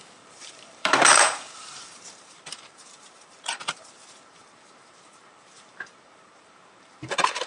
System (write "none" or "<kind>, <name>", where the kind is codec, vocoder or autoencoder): vocoder, BigVGAN v2